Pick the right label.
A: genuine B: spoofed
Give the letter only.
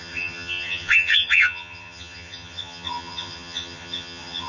B